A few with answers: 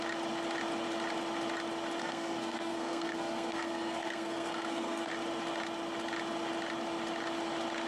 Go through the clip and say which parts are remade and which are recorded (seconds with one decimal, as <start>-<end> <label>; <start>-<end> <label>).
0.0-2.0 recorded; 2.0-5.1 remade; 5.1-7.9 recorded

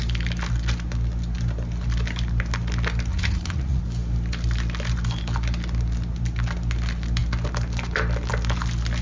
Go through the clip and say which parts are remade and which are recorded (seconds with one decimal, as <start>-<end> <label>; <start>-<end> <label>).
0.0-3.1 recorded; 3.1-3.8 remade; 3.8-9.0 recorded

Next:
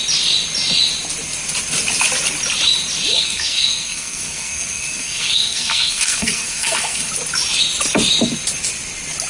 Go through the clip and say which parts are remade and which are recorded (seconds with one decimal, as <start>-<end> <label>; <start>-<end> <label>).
0.0-3.1 recorded; 3.1-7.1 remade; 7.1-9.3 recorded